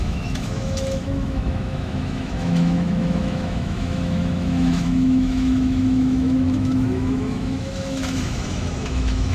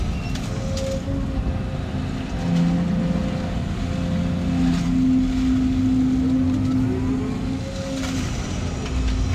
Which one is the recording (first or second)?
second